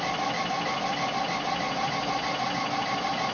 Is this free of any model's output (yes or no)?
yes